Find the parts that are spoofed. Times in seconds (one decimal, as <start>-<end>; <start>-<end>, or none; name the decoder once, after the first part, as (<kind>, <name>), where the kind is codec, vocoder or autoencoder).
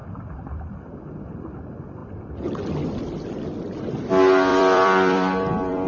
4.5-5.9 (vocoder, BigVGAN v2)